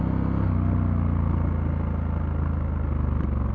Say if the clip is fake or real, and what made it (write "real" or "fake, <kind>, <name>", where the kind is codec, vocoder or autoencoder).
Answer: real